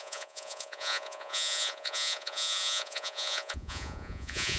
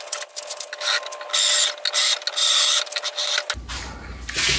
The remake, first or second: first